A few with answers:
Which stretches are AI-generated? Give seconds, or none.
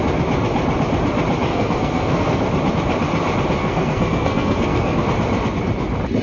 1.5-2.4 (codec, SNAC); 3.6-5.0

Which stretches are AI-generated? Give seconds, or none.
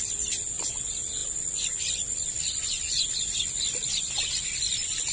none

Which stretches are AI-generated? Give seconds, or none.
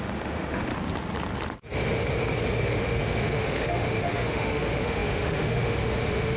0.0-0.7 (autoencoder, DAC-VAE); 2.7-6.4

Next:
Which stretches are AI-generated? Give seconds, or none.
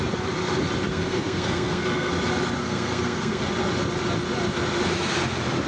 0.9-2.1 (codec, SNAC); 2.6-3.4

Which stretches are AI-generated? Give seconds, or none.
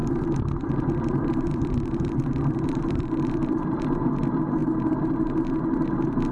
0.0-3.8 (vocoder, BigVGAN v2)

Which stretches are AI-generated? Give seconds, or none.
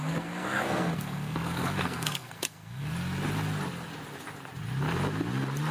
0.0-2.9 (codec, SNAC)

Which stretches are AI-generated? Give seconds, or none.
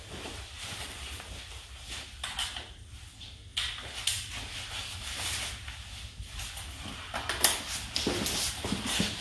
none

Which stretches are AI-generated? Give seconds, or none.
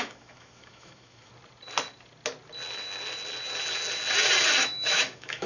0.0-1.3 (autoencoder, DAC-VAE); 4.6-5.5